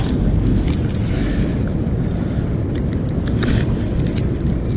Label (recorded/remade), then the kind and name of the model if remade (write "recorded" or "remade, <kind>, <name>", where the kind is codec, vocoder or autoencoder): recorded